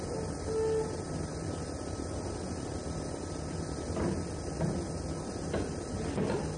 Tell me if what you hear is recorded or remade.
recorded